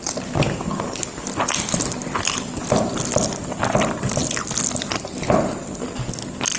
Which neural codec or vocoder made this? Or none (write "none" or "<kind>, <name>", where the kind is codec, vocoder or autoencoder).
none